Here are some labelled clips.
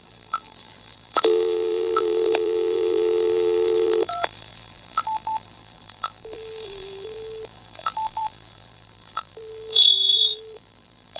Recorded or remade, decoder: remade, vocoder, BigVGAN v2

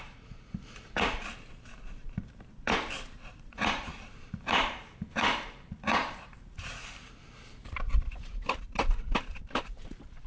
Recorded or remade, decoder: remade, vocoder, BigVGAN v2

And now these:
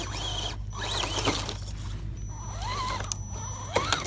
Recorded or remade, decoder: recorded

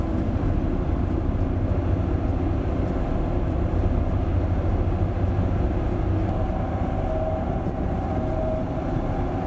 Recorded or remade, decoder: recorded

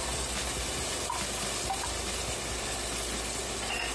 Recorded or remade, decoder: recorded